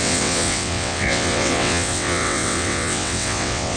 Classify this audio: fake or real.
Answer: fake